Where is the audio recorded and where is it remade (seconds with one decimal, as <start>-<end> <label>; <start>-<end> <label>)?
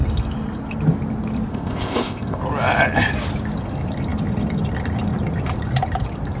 0.0-1.5 recorded; 1.5-2.4 remade; 2.4-6.4 recorded